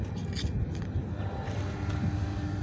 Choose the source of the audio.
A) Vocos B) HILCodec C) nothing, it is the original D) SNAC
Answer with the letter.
C